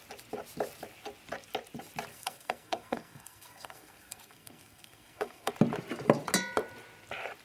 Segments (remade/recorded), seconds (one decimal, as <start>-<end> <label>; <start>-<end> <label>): 0.0-2.1 recorded; 2.1-5.5 remade; 5.5-7.4 recorded